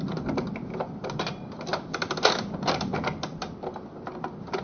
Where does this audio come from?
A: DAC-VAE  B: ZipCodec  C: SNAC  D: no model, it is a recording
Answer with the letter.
D